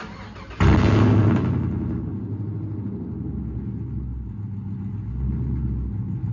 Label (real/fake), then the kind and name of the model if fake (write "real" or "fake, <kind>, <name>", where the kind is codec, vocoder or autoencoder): real